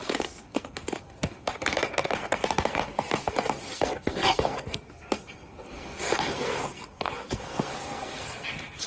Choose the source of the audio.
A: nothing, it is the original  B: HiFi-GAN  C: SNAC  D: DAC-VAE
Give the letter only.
C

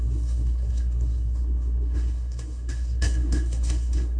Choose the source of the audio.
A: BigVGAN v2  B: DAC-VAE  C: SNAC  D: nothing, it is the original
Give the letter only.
C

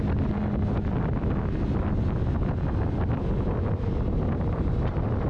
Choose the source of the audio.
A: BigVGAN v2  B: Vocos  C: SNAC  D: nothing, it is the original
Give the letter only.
D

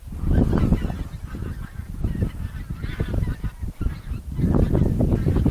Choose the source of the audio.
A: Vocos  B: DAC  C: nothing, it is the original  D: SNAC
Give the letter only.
C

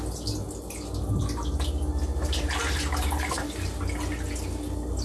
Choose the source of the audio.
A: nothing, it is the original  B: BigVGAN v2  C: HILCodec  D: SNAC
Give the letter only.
A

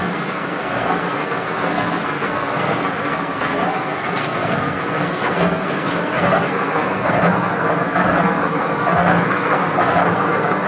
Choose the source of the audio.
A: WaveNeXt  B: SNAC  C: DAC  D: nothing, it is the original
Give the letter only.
B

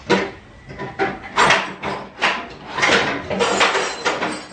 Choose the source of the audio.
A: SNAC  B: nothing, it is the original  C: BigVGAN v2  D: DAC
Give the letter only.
B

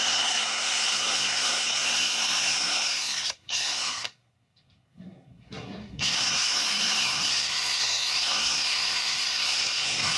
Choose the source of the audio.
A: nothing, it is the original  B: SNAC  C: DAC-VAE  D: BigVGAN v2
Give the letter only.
B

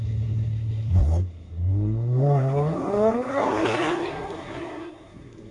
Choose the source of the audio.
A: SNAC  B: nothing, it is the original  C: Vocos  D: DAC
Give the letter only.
A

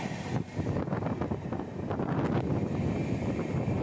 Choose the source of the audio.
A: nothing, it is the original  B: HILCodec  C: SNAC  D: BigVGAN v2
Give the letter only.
A